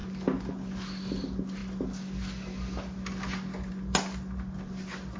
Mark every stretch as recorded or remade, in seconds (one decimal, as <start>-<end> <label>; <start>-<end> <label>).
0.0-5.2 recorded